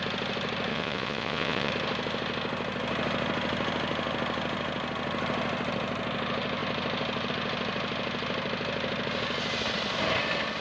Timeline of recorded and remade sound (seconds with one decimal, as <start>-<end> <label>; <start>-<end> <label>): 0.0-0.7 recorded; 0.7-1.7 remade; 1.7-10.6 recorded